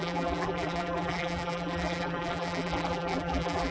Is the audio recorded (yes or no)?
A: no